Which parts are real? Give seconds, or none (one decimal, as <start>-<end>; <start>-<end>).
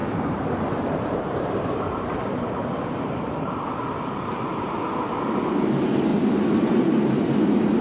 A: 4.7-6.1; 7.2-7.8